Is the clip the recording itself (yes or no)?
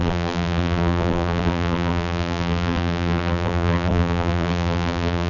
no